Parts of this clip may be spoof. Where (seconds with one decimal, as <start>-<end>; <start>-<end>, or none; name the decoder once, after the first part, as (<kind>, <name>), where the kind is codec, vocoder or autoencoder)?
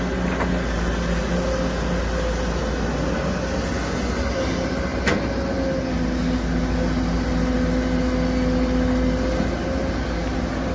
none